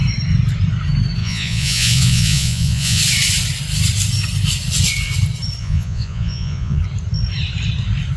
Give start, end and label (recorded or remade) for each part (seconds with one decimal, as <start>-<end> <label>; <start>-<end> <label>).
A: 0.0-1.2 recorded; 1.2-3.0 remade; 3.0-5.6 recorded; 5.6-6.8 remade; 6.8-8.2 recorded